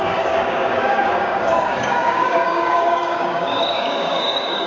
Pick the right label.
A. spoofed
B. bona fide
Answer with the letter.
A